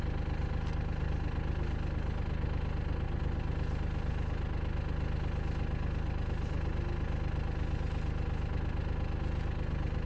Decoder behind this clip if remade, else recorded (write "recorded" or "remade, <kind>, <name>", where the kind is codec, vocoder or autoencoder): recorded